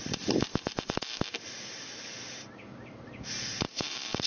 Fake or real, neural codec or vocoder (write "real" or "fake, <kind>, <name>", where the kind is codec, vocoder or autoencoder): real